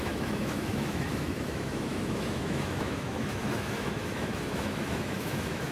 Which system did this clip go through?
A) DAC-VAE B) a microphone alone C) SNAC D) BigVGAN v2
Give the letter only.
A